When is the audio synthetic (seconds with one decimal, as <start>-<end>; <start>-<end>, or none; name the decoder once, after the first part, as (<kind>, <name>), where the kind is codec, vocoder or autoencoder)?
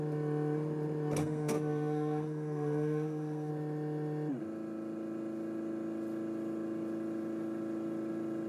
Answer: 1.2-3.5 (codec, SNAC)